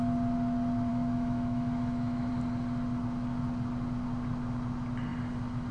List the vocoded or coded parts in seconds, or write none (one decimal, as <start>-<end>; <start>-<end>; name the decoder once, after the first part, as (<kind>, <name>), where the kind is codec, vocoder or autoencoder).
0.9-2.3 (autoencoder, DAC-VAE)